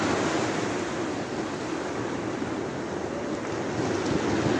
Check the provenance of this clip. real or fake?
real